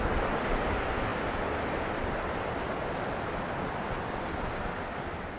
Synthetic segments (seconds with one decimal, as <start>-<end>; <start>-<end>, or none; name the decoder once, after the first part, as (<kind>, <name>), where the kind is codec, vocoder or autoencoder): none